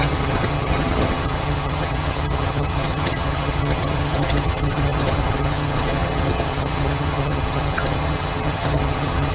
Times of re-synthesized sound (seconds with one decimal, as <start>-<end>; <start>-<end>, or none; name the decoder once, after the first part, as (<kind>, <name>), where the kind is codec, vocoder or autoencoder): 0.0-9.3 (vocoder, HiFi-GAN)